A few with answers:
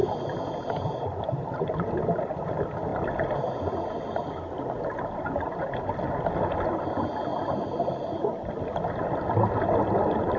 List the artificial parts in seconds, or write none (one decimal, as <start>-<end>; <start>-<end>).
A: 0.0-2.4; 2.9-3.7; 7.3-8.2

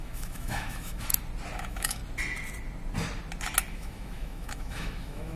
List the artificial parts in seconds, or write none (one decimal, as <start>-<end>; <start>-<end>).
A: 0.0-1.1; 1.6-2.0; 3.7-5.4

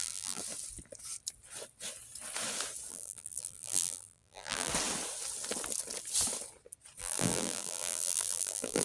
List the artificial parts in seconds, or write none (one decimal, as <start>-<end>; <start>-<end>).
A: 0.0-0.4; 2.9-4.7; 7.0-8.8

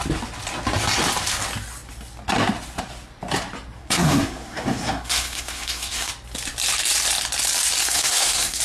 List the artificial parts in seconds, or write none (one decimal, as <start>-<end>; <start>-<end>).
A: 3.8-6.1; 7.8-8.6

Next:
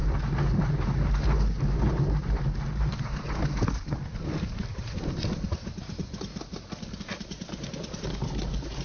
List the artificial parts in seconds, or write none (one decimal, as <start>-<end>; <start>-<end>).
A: 0.7-6.3; 7.0-8.8

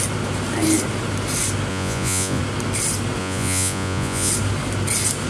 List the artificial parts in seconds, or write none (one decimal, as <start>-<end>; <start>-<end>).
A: 1.7-2.4; 3.2-4.3

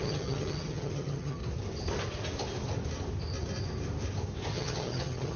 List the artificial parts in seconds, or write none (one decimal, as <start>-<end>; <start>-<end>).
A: 0.0-1.4; 4.5-5.4

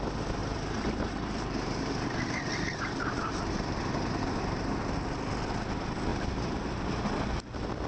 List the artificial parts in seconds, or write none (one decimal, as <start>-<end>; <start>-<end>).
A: 0.4-5.1; 6.1-6.8